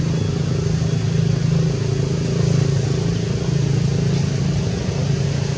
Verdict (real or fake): real